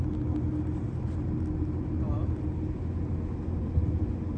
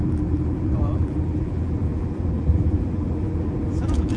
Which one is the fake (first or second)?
second